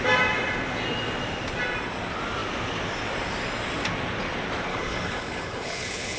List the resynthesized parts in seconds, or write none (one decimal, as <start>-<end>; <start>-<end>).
4.7-6.2